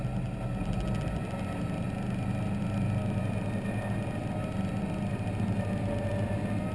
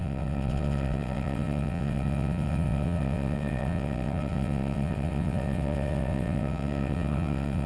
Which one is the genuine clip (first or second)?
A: first